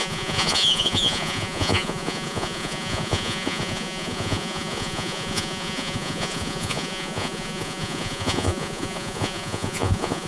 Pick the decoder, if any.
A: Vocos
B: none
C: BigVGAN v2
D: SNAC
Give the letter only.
A